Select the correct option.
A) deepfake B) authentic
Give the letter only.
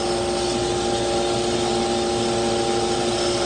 B